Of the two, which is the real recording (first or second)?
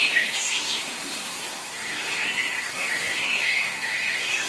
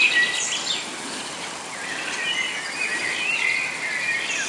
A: second